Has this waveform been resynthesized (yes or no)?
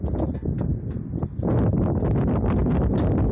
no